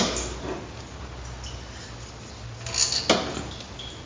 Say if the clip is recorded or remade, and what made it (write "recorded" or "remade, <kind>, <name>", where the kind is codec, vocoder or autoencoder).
recorded